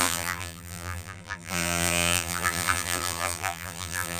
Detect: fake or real fake